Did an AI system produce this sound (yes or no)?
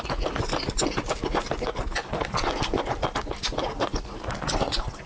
no